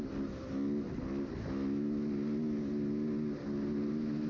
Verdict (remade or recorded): recorded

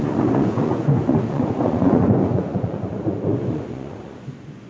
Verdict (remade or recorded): remade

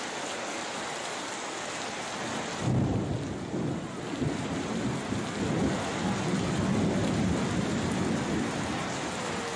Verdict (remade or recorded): recorded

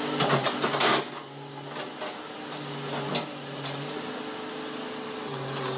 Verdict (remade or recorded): recorded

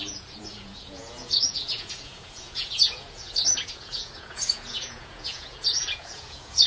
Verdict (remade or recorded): remade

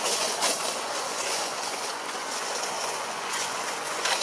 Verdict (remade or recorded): remade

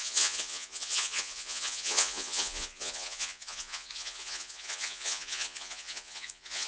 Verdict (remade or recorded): remade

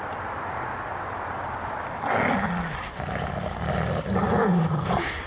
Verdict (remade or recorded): recorded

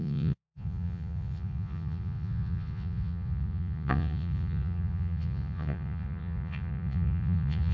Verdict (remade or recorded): remade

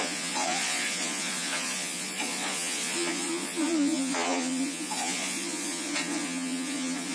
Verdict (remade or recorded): remade